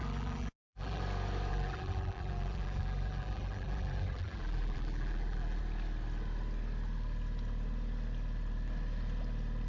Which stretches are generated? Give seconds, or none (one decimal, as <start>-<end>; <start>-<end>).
0.0-1.0; 1.5-5.6